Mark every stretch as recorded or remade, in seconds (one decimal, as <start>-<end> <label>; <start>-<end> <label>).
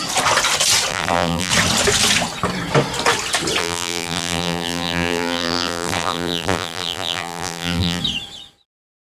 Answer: 0.0-0.9 recorded; 0.9-1.5 remade; 1.5-3.6 recorded; 3.6-8.0 remade; 8.0-9.0 recorded